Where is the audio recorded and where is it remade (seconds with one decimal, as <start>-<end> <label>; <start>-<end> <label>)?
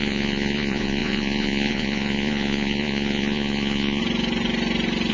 0.0-4.0 remade; 4.0-5.1 recorded